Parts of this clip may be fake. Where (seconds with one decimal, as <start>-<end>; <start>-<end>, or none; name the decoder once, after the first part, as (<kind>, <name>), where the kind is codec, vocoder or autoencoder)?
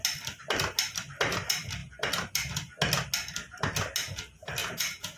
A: 4.6-5.2 (vocoder, Vocos)